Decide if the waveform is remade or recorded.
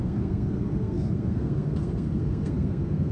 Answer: remade